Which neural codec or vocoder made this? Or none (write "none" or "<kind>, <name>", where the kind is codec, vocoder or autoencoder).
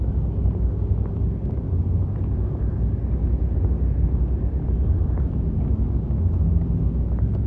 none